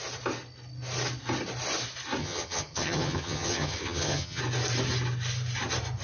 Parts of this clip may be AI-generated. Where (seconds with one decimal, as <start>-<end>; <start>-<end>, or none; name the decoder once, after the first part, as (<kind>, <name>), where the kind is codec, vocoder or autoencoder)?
2.2-4.4 (vocoder, HiFi-GAN)